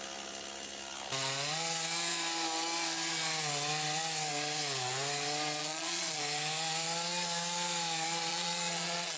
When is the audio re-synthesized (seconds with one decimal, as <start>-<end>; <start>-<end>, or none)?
5.6-6.2; 8.3-9.2